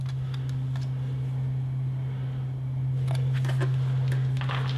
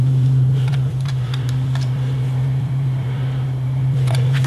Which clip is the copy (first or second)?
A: second